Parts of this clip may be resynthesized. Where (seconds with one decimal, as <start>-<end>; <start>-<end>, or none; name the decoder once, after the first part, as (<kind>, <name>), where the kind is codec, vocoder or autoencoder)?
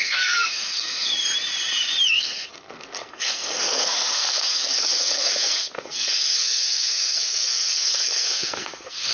0.0-1.1 (codec, SNAC); 2.1-9.1